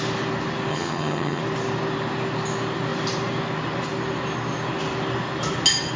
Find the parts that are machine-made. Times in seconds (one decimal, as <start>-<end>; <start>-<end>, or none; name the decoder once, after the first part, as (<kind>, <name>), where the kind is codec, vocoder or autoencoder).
0.7-1.4 (vocoder, HiFi-GAN)